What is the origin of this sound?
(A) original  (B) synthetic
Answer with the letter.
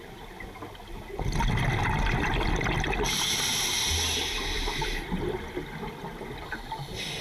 A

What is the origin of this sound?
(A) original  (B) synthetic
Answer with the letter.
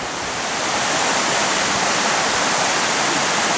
A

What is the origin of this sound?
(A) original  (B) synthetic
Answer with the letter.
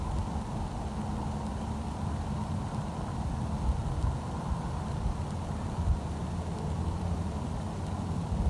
A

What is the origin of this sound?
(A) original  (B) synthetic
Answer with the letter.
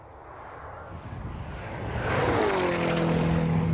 A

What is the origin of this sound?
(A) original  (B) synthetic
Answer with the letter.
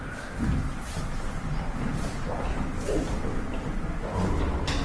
A